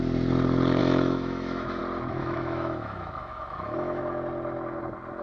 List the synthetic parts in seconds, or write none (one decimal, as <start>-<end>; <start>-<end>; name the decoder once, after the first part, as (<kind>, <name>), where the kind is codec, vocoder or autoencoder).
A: 0.8-1.8 (autoencoder, DAC-VAE); 2.2-4.0